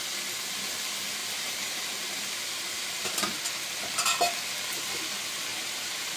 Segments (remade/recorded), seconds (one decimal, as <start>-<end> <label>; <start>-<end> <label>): 0.0-1.2 recorded; 1.2-3.4 remade; 3.4-5.5 recorded; 5.5-6.2 remade